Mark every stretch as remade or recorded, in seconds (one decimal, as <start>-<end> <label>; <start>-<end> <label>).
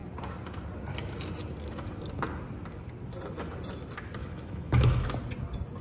0.0-4.2 recorded; 4.2-5.1 remade; 5.1-5.8 recorded